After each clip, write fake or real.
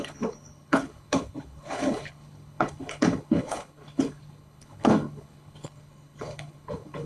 fake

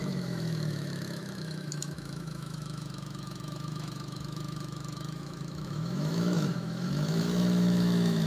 fake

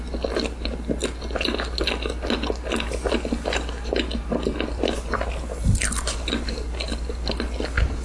real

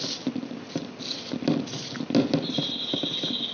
real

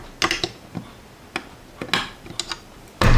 real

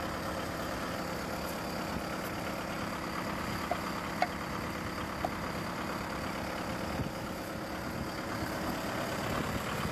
real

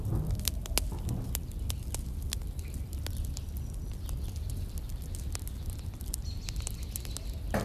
real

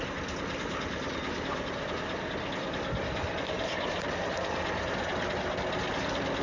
real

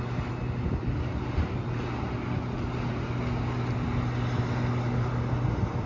real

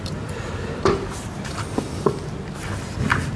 real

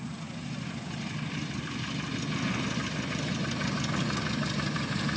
real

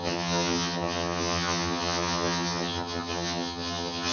fake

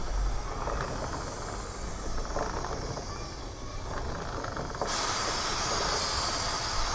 real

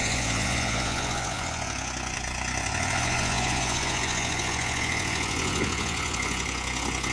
fake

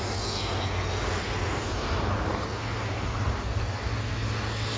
real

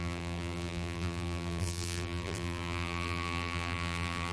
fake